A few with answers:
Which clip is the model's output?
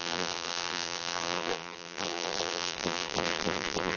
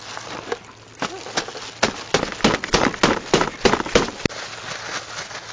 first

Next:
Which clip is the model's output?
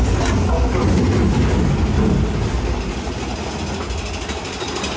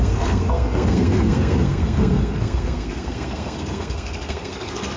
second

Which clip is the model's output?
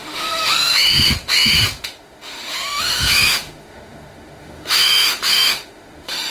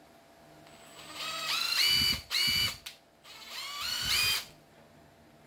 first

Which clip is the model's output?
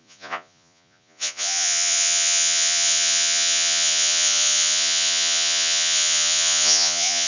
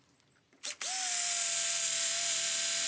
first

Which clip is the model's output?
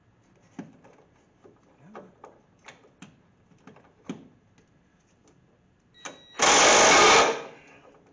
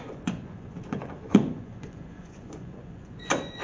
second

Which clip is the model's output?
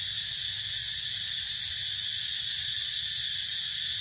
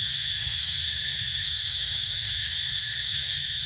second